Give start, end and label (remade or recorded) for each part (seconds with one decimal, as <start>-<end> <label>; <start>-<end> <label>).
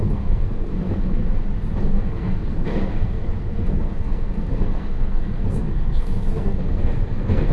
0.0-1.2 remade; 1.2-1.8 recorded; 1.8-7.5 remade